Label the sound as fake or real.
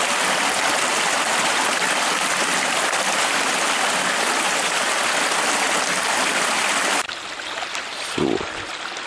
real